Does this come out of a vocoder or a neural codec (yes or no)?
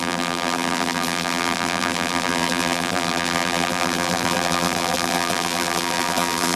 yes